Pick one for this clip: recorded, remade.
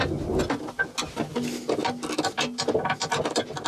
recorded